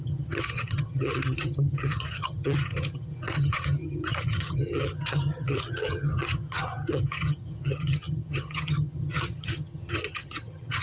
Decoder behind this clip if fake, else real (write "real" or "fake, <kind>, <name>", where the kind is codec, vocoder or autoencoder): fake, vocoder, HiFi-GAN